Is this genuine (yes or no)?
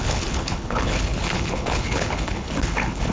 no